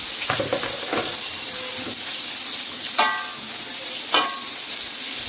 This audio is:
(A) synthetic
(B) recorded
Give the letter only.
B